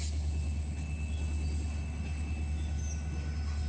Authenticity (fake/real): real